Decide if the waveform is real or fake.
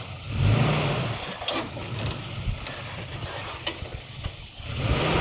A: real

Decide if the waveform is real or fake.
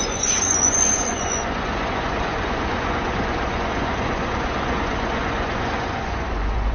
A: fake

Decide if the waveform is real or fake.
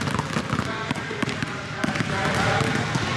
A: real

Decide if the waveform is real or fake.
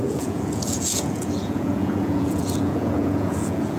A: fake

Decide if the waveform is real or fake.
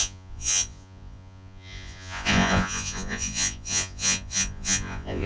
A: fake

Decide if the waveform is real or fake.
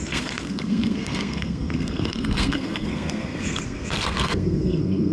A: fake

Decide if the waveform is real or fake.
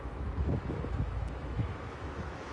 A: fake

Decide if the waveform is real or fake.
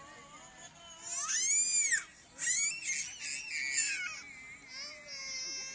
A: real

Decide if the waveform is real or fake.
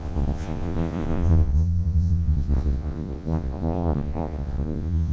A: fake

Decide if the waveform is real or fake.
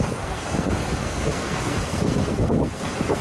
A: fake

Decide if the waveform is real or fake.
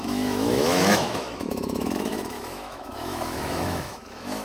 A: fake